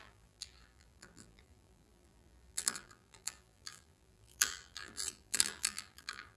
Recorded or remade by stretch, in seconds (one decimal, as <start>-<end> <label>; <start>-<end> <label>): 0.0-6.4 remade